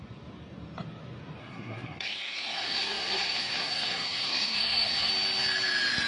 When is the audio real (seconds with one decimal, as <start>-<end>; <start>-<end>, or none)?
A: 0.0-1.4; 5.1-6.1